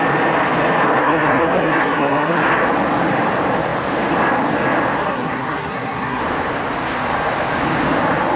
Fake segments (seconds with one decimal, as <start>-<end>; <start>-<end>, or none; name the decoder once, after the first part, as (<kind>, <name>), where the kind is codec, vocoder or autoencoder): 1.0-2.4 (codec, SNAC); 5.0-6.2